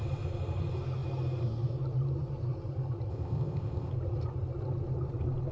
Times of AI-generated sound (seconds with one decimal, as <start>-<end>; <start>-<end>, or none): 3.1-3.9